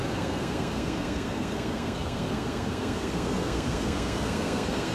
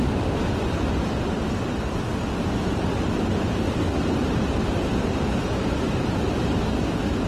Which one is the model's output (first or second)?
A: first